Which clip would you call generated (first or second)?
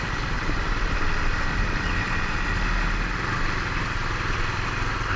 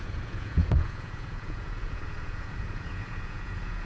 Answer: second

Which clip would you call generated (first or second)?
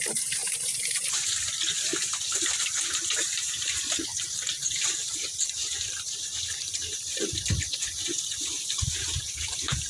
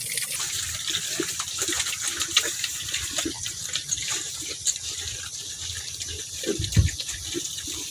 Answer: first